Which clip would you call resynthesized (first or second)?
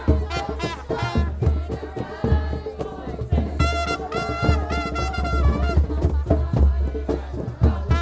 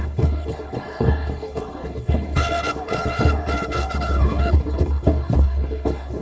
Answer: second